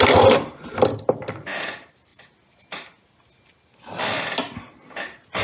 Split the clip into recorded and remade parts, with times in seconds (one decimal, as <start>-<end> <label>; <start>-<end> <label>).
0.0-5.4 recorded